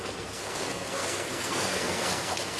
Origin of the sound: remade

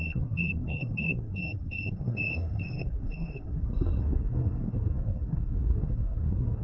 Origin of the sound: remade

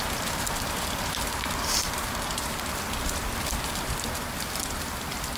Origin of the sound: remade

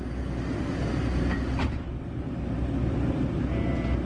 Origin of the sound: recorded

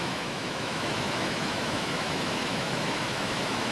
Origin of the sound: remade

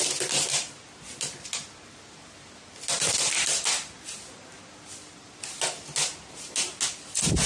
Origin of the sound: recorded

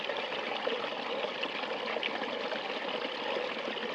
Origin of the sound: recorded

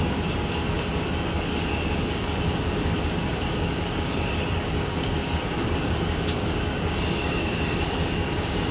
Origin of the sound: remade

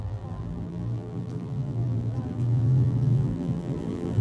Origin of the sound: remade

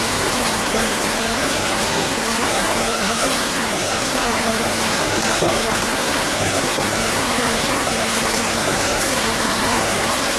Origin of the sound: remade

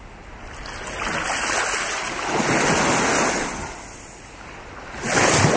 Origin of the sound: recorded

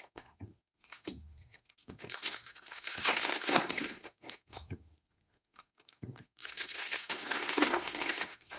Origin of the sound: remade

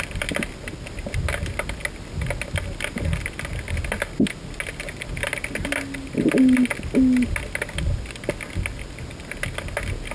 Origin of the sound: recorded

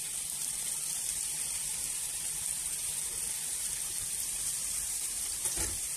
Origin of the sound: remade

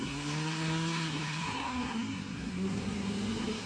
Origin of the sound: remade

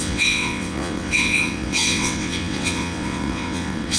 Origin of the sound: remade